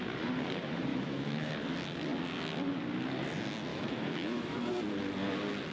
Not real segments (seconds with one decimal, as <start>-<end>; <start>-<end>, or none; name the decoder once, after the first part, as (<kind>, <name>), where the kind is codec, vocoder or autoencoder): 0.9-1.5 (autoencoder, DAC-VAE); 3.7-4.7